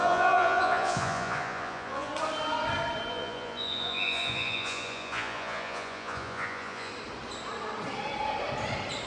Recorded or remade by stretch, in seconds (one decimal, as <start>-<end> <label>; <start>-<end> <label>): 0.0-2.1 remade; 2.1-3.1 recorded; 3.1-6.9 remade; 6.9-9.1 recorded